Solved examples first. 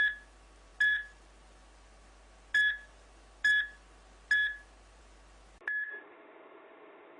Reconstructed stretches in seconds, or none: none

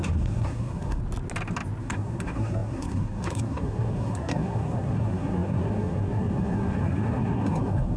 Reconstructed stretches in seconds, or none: 0.0-1.0 (codec, SNAC); 1.8-8.0

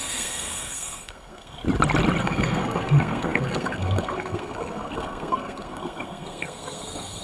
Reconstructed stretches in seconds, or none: 0.0-1.6 (codec, SNAC); 2.2-7.2

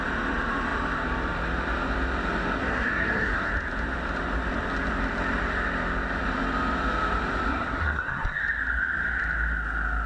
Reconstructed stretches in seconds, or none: 2.6-3.5 (codec, SNAC); 7.5-8.4

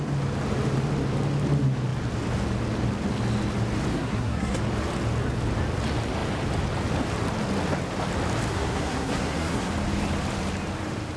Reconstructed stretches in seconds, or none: 3.9-4.6 (codec, SNAC); 8.5-9.7